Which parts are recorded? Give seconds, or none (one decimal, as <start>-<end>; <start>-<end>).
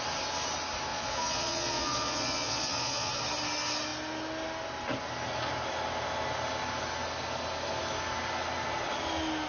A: 0.0-0.9; 3.1-9.5